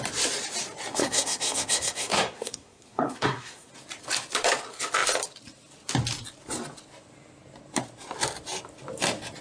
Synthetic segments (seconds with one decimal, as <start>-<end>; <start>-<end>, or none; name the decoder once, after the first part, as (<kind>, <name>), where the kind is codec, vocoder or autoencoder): 1.0-3.7 (codec, SNAC)